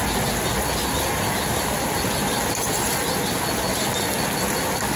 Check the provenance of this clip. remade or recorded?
recorded